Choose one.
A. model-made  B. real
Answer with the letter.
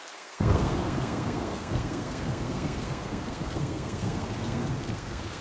A